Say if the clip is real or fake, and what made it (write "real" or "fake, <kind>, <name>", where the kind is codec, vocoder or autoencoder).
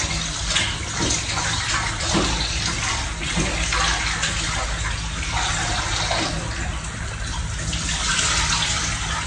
real